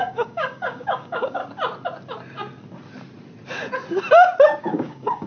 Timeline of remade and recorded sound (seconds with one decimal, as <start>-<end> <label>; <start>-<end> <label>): 0.0-1.4 remade; 1.4-4.6 recorded; 4.6-5.3 remade